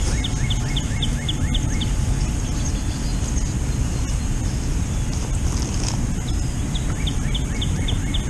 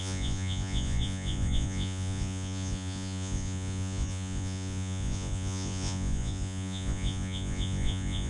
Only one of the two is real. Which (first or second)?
first